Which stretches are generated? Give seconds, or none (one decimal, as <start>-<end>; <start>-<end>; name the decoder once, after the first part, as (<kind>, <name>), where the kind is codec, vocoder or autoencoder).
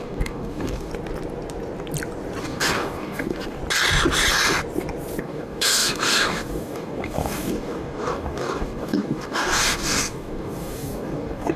0.0-0.9 (codec, DAC); 2.4-3.6; 5.2-11.6